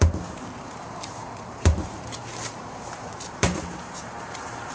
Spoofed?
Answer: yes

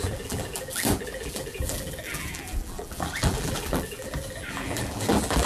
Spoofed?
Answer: yes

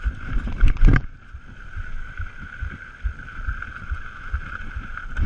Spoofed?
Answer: no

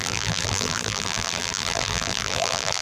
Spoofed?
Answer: yes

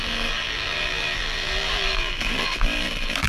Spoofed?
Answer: yes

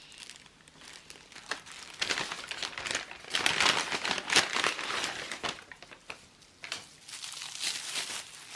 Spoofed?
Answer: no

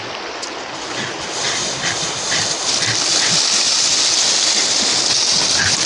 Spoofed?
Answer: no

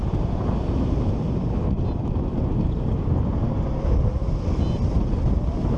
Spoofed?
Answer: no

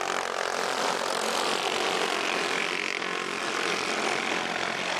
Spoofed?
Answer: no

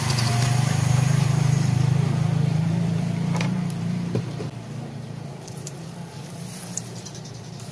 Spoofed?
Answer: yes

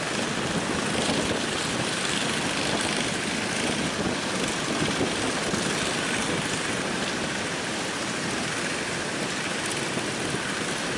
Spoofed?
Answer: no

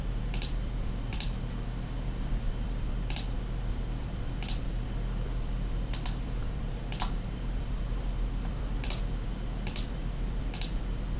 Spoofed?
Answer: yes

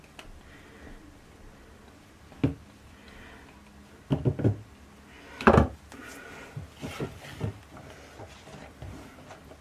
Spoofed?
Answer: no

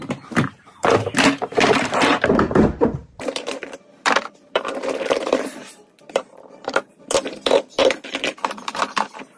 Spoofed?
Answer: yes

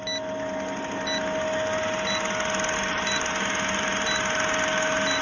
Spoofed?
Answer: no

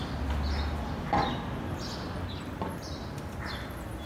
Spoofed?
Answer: no